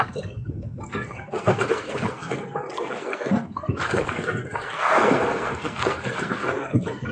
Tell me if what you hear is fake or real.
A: fake